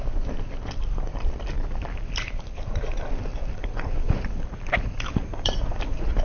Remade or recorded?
remade